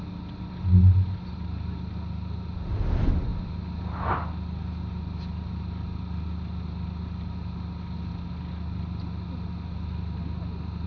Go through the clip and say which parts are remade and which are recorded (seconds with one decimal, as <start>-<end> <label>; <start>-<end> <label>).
0.0-10.9 recorded